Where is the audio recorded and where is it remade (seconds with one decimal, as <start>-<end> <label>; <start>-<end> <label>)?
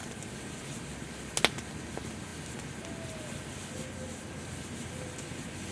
0.0-5.7 recorded